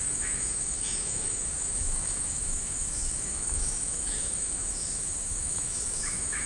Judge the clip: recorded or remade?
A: remade